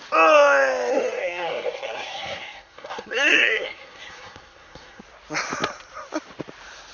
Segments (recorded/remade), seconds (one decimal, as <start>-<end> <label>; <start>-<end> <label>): 0.0-0.9 recorded; 0.9-5.0 remade; 5.0-6.9 recorded